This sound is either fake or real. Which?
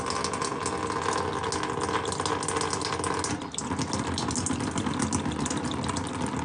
real